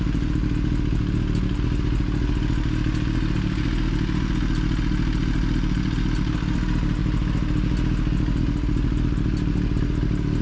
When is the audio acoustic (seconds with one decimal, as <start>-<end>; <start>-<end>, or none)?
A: 0.0-10.4